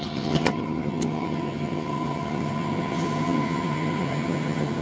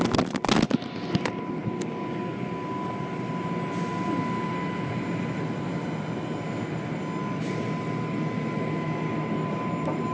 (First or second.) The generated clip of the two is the first